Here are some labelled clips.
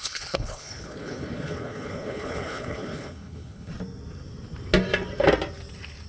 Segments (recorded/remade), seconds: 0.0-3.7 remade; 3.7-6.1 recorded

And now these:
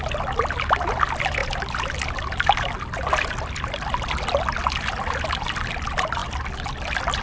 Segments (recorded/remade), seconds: 0.0-7.2 recorded

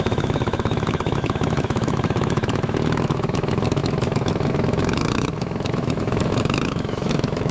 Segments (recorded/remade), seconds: 0.0-7.5 remade

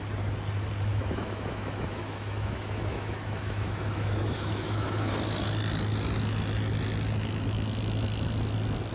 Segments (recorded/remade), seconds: 0.0-0.9 recorded; 0.9-5.1 remade; 5.1-8.9 recorded